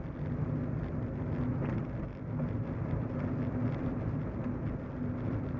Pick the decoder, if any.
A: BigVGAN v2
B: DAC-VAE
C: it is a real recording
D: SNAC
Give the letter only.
C